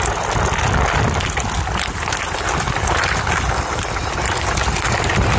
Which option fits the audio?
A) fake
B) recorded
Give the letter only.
B